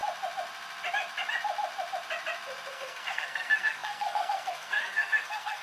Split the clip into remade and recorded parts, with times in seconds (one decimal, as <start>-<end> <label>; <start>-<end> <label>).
0.0-2.7 recorded; 2.7-5.6 remade